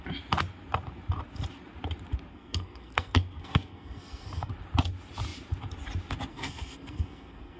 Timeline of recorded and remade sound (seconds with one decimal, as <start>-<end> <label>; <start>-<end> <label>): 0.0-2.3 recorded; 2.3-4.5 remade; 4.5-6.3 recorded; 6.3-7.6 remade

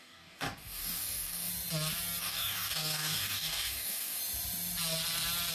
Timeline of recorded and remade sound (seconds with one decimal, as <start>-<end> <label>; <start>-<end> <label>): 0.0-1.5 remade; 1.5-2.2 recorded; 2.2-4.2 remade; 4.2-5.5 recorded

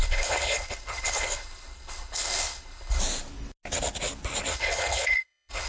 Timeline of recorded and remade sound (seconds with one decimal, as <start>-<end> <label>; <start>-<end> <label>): 0.0-3.0 remade; 3.0-4.5 recorded; 4.5-5.7 remade